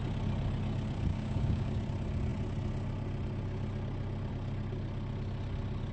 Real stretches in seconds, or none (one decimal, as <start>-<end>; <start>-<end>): 0.0-1.1; 1.8-5.9